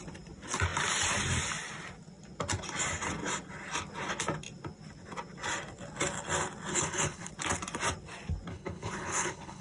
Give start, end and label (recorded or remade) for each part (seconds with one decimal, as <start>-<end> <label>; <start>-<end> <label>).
0.0-6.7 recorded; 6.7-7.3 remade; 7.3-8.5 recorded; 8.5-9.6 remade